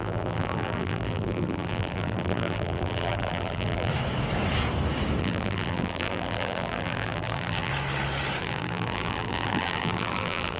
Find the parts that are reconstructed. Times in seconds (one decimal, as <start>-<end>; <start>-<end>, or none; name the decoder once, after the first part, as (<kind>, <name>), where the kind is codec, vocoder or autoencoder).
0.0-3.9 (vocoder, BigVGAN v2); 5.2-7.7; 8.4-10.6